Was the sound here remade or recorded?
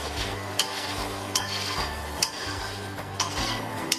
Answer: remade